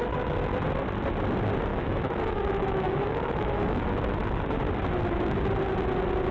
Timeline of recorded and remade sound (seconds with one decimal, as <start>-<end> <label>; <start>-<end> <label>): 0.0-1.7 recorded; 1.7-3.8 remade; 3.8-6.3 recorded

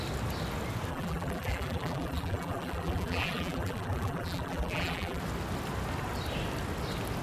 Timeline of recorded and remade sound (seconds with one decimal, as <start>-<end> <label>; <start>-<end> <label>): 0.0-0.9 recorded; 0.9-5.2 remade; 5.2-7.2 recorded

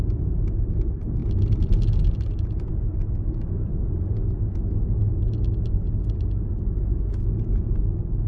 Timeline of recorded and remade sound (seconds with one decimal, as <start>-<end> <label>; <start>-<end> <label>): 0.0-3.7 recorded; 3.7-5.1 remade; 5.1-8.3 recorded

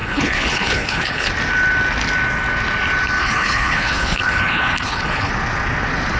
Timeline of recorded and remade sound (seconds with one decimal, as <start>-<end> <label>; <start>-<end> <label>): 0.0-1.3 remade; 1.3-3.2 recorded; 3.2-5.3 remade; 5.3-6.2 recorded

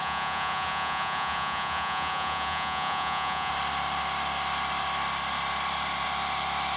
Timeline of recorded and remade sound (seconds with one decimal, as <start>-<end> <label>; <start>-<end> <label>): 0.0-3.5 remade; 3.5-6.8 recorded